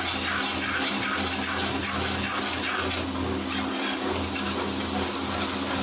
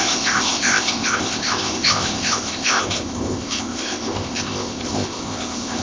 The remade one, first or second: second